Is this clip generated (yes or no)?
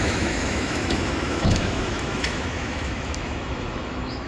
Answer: yes